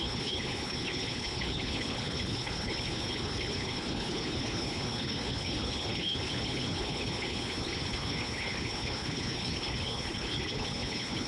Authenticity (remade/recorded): remade